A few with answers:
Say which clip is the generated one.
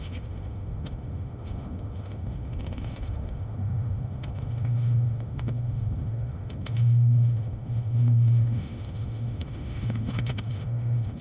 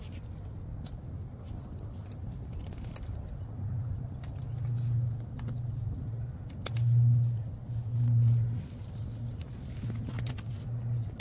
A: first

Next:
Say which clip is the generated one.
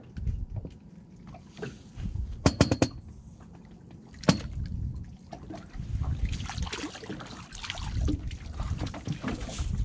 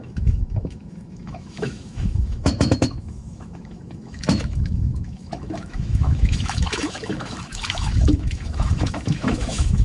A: second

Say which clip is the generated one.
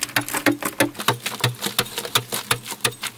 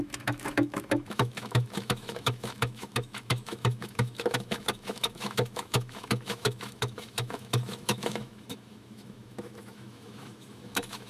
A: second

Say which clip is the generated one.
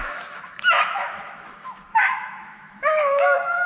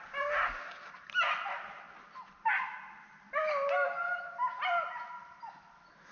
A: first